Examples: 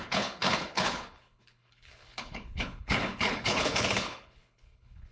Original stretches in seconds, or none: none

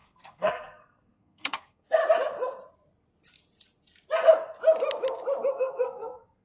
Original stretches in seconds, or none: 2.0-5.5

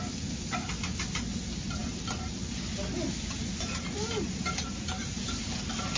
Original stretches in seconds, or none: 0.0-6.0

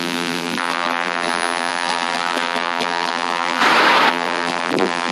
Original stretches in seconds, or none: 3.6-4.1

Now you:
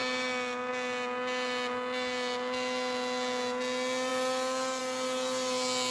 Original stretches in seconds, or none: 0.0-5.9

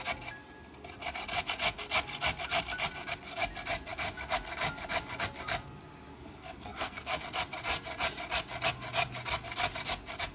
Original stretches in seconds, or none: 0.0-6.1; 7.2-10.3

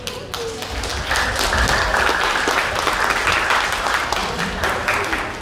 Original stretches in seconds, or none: 0.0-4.2

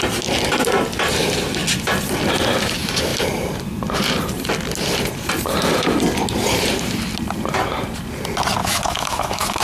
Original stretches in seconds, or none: 0.0-8.6